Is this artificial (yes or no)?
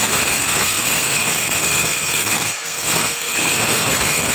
yes